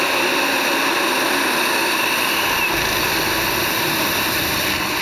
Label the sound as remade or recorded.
recorded